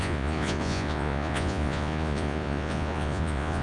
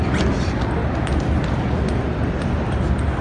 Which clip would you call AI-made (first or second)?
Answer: first